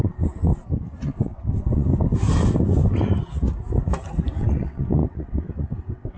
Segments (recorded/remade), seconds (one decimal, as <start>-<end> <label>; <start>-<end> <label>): 0.0-0.5 remade; 0.5-1.0 recorded; 1.0-1.9 remade; 1.9-4.4 recorded; 4.4-6.2 remade